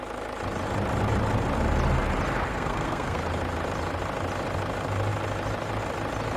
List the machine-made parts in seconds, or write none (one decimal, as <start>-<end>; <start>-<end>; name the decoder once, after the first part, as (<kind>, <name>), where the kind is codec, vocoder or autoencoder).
2.5-3.2 (codec, SNAC)